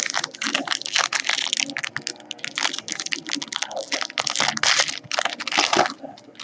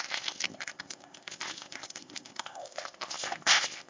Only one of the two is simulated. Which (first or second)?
second